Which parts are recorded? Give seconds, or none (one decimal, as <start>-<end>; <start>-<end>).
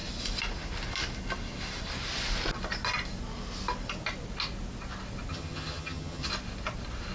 0.0-5.3; 6.3-7.1